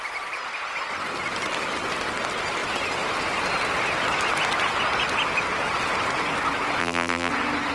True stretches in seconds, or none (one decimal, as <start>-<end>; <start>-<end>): 0.0-6.8; 7.3-7.7